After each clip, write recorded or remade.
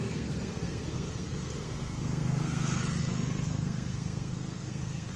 remade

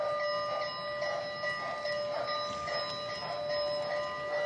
recorded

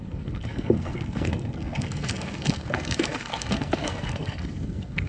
remade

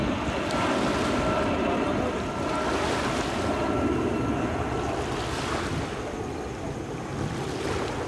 recorded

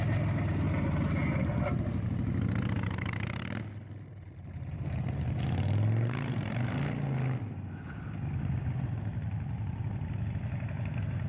recorded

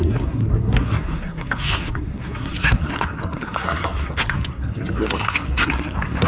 remade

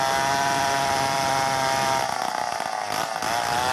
recorded